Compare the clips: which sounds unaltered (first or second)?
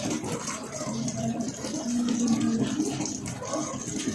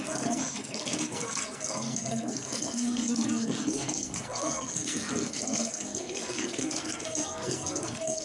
first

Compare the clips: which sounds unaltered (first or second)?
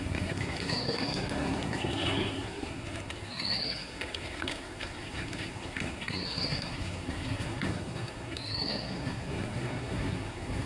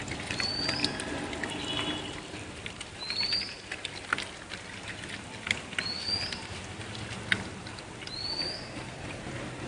second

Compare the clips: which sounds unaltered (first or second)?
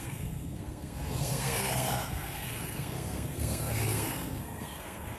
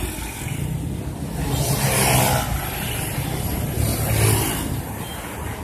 second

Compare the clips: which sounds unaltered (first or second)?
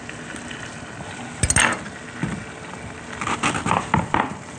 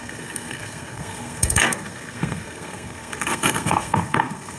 first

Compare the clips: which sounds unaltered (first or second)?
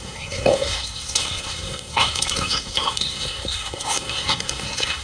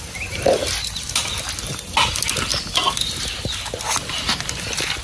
second